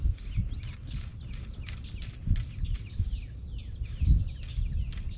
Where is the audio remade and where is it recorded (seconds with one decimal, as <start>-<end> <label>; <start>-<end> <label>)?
0.0-5.2 recorded